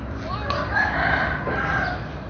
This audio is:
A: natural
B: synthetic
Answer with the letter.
A